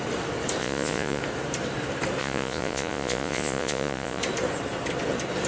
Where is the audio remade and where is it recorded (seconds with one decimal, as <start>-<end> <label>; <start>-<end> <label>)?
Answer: 0.0-0.6 recorded; 0.6-1.2 remade; 1.2-2.2 recorded; 2.2-4.2 remade; 4.2-5.5 recorded